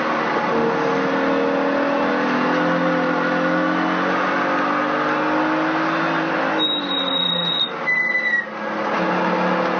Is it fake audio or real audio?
real